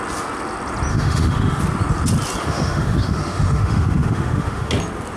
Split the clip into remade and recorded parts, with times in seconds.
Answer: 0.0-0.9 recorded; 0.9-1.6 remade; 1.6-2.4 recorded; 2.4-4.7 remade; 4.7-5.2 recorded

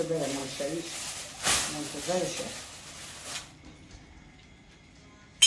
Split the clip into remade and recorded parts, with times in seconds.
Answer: 0.0-5.5 recorded

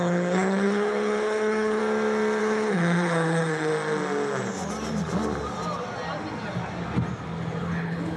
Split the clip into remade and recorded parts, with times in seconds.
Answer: 0.0-1.8 remade; 1.8-2.4 recorded; 2.4-3.7 remade; 3.7-7.6 recorded; 7.6-8.2 remade